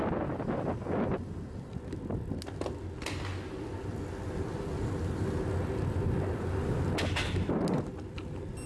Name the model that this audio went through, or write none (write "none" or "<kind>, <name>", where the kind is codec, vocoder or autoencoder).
none